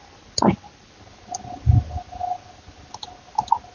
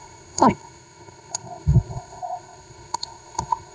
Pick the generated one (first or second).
second